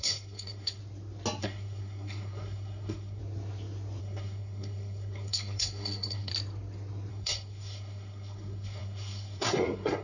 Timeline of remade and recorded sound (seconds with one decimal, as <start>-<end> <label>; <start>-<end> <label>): 0.0-0.8 remade; 0.8-1.4 recorded; 1.4-3.2 remade; 3.2-4.0 recorded; 4.0-6.3 remade; 6.3-7.1 recorded; 7.1-10.0 remade